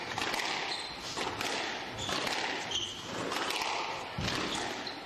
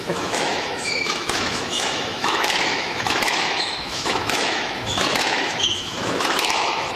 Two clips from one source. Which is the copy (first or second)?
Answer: second